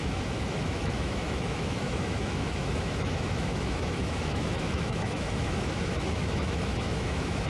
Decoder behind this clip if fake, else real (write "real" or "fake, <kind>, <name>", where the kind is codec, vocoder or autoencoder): fake, autoencoder, DAC-VAE